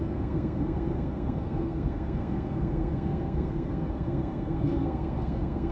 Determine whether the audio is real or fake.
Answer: fake